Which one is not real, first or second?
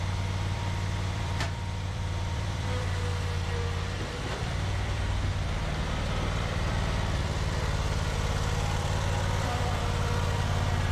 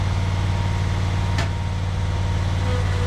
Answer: first